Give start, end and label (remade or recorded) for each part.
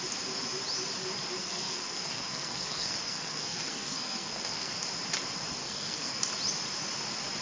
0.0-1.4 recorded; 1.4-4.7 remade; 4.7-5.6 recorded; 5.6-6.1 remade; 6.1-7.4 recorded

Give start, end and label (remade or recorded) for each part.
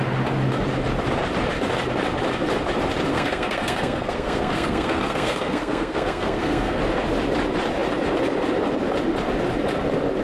0.0-3.1 recorded; 3.1-6.8 remade; 6.8-10.2 recorded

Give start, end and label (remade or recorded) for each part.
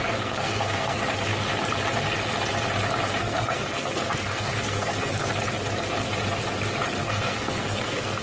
0.0-1.0 remade; 1.0-3.2 recorded; 3.2-5.3 remade; 5.3-7.0 recorded; 7.0-8.2 remade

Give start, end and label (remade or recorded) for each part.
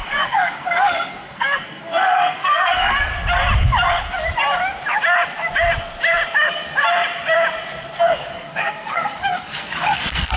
0.0-3.1 remade; 3.1-8.0 recorded; 8.0-10.4 remade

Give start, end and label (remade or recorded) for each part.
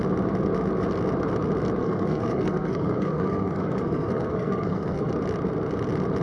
0.0-1.8 recorded; 1.8-5.1 remade; 5.1-6.2 recorded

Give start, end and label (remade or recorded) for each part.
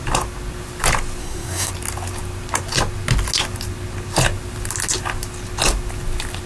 0.0-1.2 recorded; 1.2-1.7 remade; 1.7-6.5 recorded